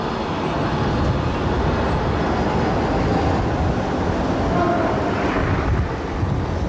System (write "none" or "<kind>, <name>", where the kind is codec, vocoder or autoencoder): none